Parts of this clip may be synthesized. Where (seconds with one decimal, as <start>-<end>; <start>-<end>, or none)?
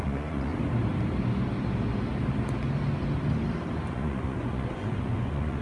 0.0-0.5; 3.9-5.6